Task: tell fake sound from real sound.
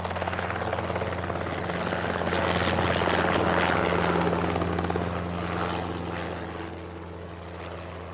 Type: real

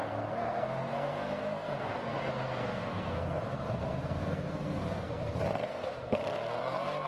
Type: fake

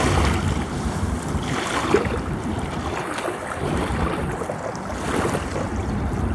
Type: real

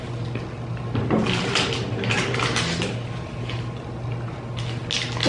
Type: real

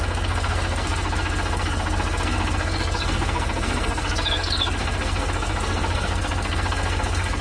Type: fake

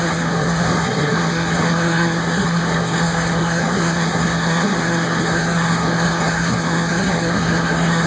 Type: fake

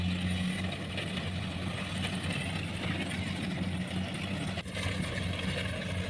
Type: real